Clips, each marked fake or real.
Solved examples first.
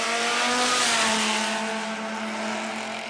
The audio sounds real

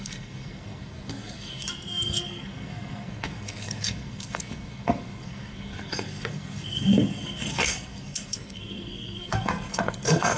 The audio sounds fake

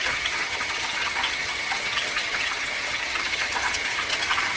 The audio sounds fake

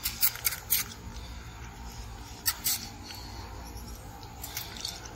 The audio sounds real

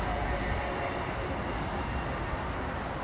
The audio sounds real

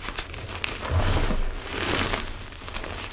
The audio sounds real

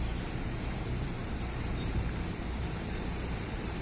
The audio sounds fake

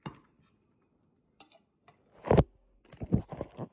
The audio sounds real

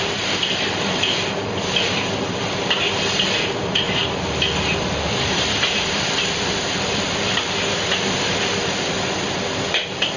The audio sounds fake